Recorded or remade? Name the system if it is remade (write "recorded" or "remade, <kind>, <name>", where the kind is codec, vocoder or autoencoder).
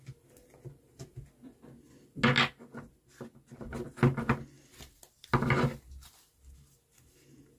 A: recorded